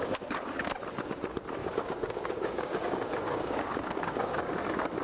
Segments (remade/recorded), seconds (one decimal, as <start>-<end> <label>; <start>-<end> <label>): 0.0-1.6 recorded; 1.6-4.5 remade; 4.5-5.0 recorded